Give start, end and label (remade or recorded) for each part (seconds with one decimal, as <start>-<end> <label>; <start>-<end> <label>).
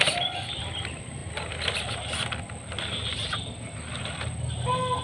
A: 0.0-5.0 recorded